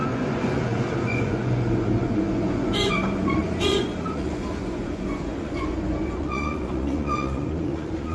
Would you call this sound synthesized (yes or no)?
yes